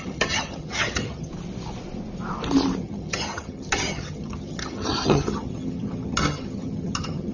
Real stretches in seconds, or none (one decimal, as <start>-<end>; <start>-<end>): 1.3-2.8